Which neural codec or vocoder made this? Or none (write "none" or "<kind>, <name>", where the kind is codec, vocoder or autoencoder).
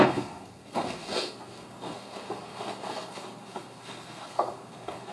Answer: codec, SNAC